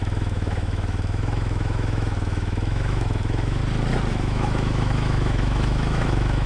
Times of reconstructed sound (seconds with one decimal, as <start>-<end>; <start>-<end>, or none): 0.0-3.6; 4.1-6.5